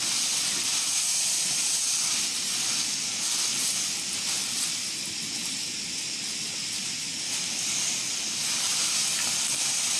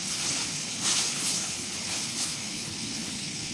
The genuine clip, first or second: first